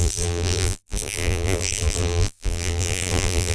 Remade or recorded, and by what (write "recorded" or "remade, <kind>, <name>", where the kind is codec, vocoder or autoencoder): remade, vocoder, BigVGAN v2